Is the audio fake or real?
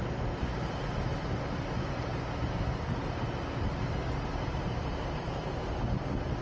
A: real